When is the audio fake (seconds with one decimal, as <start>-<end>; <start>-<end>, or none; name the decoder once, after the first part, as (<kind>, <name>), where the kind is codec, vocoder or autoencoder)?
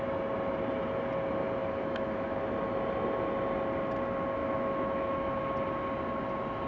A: 1.6-2.4 (autoencoder, DAC-VAE); 4.4-5.4